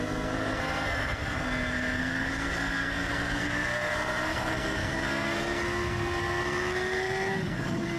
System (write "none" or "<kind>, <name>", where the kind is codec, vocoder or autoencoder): codec, SNAC